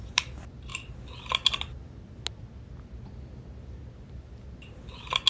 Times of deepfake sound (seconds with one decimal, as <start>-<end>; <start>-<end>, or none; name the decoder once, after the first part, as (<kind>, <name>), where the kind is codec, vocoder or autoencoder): none